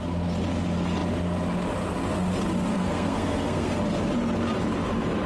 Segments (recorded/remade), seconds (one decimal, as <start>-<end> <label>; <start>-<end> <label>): 0.0-2.7 recorded; 2.7-3.8 remade; 3.8-5.3 recorded